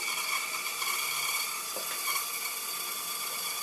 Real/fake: real